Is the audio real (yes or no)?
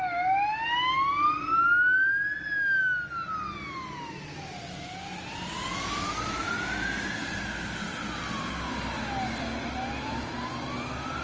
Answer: yes